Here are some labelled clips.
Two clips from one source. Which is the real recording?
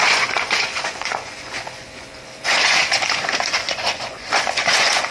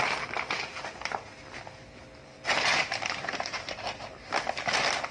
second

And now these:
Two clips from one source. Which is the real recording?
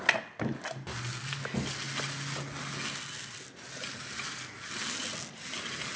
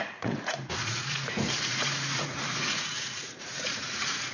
first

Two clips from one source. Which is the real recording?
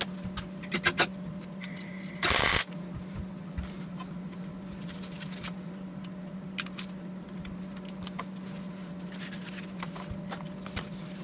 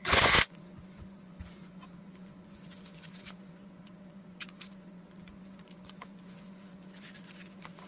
first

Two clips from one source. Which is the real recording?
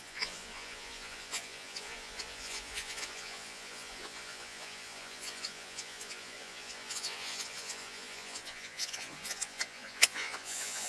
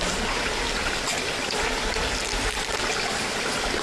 second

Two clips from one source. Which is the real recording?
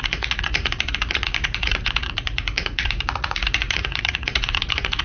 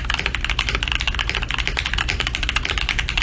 second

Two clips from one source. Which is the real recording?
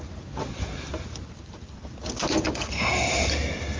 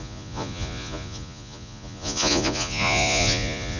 first